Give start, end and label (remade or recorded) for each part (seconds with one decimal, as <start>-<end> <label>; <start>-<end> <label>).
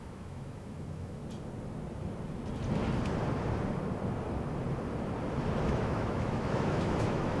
0.0-1.2 remade; 1.2-5.6 recorded; 5.6-7.4 remade